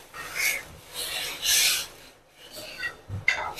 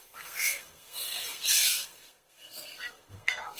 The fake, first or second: second